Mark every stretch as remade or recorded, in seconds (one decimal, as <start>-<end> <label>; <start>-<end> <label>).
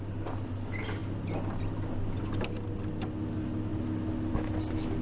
0.0-5.0 recorded